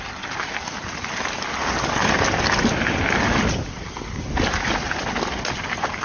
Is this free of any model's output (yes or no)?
yes